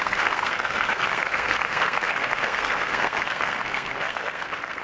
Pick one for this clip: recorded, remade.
remade